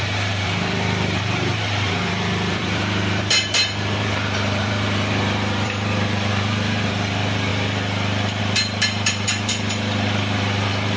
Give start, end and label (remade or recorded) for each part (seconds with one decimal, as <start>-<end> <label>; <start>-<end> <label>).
0.0-7.5 remade; 7.5-8.4 recorded; 8.4-11.0 remade